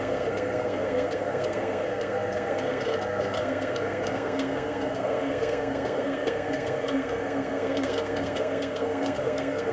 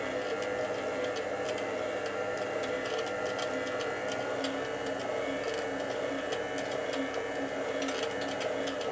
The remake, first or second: first